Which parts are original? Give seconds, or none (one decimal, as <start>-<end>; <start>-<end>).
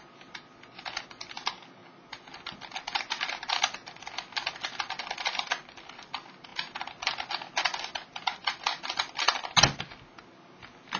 0.0-11.0